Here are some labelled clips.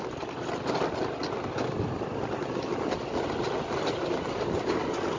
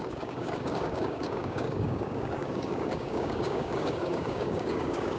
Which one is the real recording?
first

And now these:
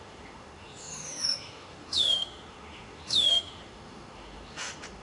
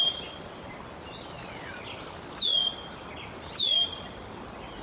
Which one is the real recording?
second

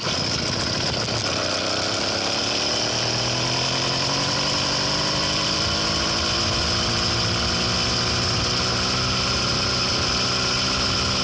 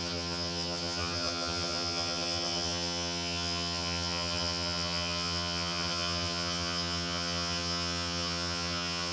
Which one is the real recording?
first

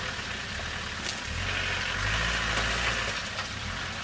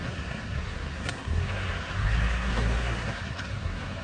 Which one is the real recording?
first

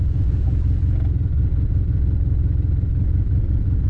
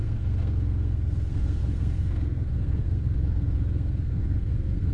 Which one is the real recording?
first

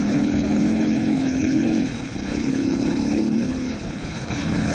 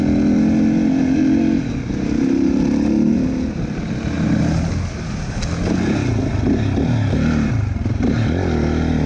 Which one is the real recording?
second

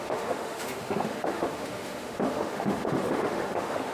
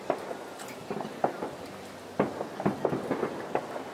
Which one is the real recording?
second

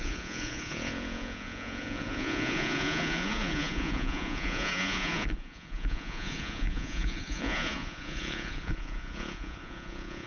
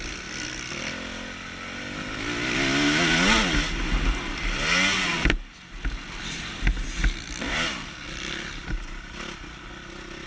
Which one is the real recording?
second